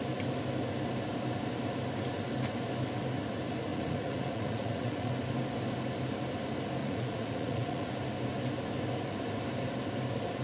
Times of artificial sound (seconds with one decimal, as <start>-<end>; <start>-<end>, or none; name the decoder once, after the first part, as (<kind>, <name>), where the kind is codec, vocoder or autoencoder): 3.7-5.1 (vocoder, Vocos); 6.8-7.9